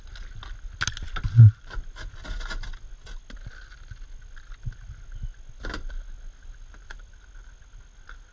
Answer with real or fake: real